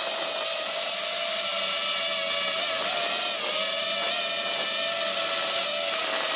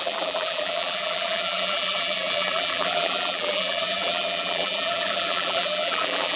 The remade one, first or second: second